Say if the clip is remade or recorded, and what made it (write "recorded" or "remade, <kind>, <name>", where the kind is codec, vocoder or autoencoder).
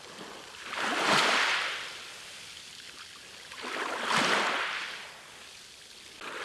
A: recorded